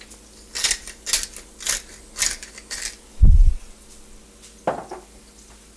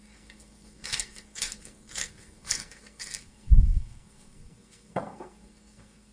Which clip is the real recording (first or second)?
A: first